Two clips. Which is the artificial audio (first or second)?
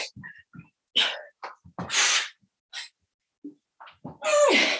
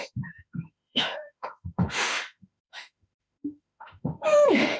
second